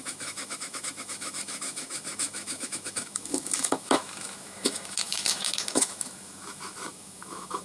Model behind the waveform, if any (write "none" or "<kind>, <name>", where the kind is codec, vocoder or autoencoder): autoencoder, DAC-VAE